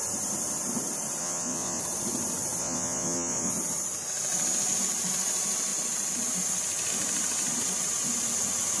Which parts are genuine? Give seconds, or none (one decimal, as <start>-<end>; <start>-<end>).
0.0-1.2; 1.8-2.6; 3.5-8.8